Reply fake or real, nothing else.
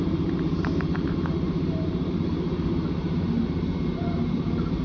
fake